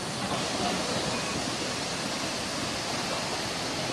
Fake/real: real